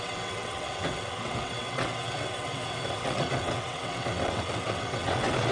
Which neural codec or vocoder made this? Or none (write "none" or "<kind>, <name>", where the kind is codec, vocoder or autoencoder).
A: vocoder, WaveNeXt